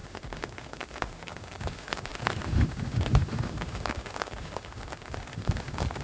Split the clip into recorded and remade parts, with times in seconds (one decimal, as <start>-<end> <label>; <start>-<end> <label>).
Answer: 0.0-6.0 remade